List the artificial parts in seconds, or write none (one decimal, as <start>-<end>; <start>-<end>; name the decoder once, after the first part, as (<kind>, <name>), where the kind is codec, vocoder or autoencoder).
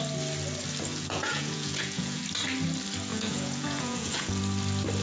0.9-2.2 (vocoder, Vocos); 3.1-4.4